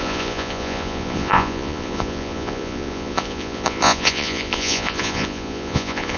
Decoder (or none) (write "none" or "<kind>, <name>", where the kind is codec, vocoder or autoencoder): vocoder, Vocos